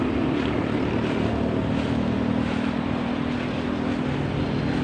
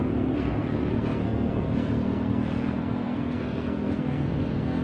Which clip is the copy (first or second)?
second